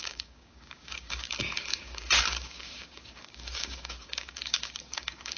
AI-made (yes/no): yes